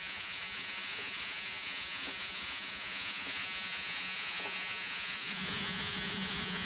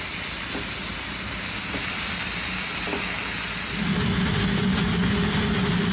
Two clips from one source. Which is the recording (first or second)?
second